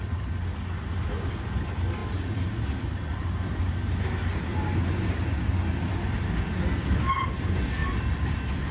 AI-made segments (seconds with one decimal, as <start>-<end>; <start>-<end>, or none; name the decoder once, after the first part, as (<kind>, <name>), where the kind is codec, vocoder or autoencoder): none